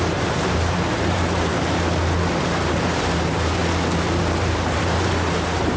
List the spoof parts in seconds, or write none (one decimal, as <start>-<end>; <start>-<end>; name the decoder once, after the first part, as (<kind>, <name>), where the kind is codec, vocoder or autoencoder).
0.0-1.5 (vocoder, BigVGAN v2); 2.4-3.6; 4.2-5.8

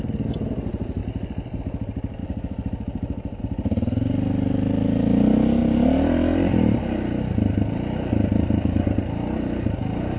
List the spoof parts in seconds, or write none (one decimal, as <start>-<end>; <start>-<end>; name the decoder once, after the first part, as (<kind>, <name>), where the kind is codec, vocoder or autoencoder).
1.0-1.6 (vocoder, BigVGAN v2); 2.2-3.4; 5.6-7.2